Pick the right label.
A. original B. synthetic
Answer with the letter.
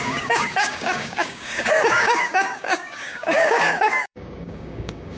B